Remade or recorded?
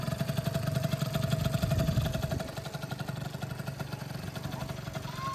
recorded